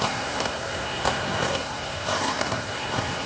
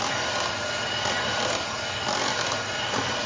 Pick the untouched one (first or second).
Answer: second